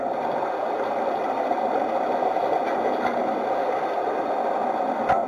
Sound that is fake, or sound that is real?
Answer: real